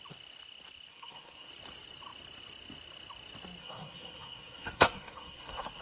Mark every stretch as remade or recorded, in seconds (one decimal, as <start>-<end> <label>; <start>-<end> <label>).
0.0-0.9 recorded; 0.9-1.5 remade; 1.5-3.6 recorded; 3.6-5.8 remade